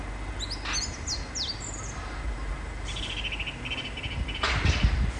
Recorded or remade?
recorded